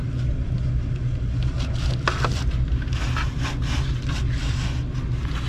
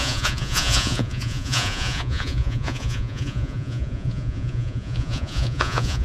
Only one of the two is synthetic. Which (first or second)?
second